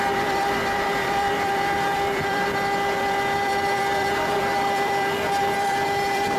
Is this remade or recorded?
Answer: remade